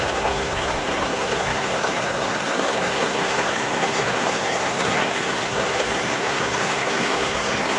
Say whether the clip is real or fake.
fake